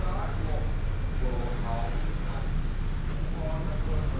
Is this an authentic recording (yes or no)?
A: yes